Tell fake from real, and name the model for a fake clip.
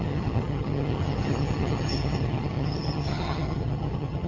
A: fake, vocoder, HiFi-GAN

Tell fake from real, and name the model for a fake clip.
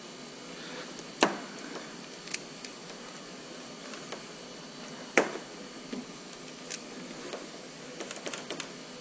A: real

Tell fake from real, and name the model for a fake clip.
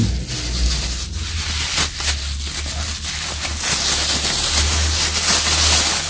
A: real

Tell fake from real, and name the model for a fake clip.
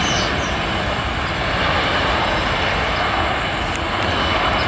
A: real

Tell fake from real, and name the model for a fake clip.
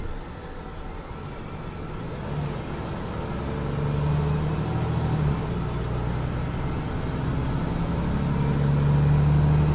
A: real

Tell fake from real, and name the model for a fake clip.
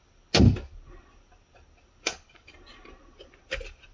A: real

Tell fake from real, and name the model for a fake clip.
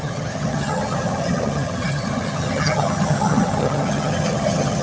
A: fake, vocoder, HiFi-GAN